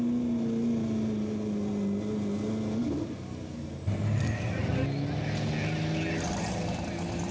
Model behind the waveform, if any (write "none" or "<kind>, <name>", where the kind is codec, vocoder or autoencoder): none